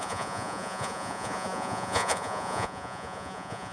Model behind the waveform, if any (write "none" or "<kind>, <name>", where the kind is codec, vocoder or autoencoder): vocoder, Vocos